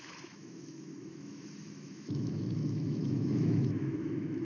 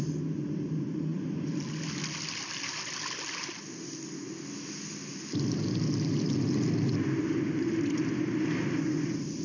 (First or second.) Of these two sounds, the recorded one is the second